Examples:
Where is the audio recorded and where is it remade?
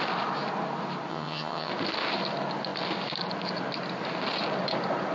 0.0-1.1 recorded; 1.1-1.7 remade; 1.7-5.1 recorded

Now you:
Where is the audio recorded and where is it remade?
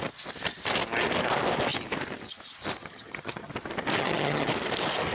0.0-2.8 recorded; 2.8-3.5 remade; 3.5-4.0 recorded; 4.0-4.5 remade; 4.5-5.1 recorded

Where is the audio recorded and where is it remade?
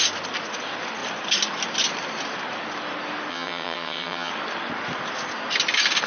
0.0-3.3 recorded; 3.3-4.3 remade; 4.3-6.1 recorded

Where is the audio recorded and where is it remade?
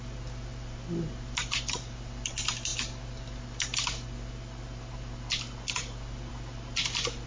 0.0-7.3 recorded